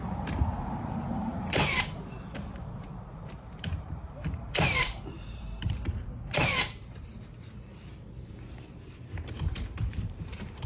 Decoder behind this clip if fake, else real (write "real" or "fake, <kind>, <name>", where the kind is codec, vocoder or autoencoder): fake, vocoder, BigVGAN v2